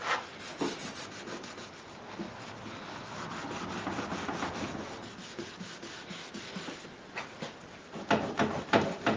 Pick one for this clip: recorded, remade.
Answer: recorded